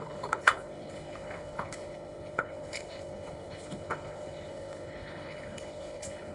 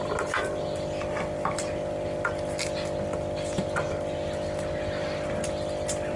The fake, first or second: first